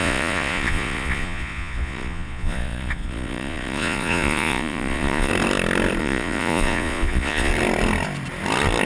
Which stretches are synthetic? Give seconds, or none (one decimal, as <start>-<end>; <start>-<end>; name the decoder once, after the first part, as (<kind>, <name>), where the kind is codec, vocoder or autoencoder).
0.0-5.3 (vocoder, Vocos); 6.0-7.5